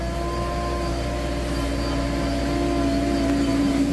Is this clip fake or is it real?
real